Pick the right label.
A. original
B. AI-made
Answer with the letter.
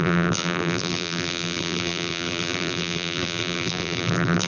B